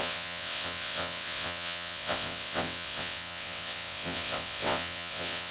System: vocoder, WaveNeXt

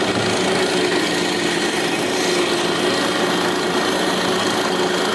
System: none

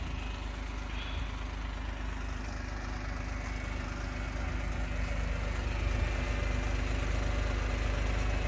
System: none